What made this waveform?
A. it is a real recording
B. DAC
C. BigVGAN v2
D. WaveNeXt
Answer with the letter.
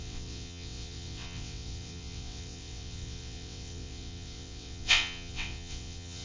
D